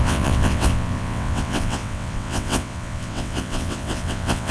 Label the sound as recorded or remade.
remade